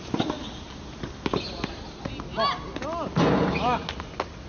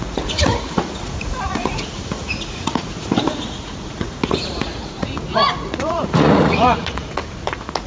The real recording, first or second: first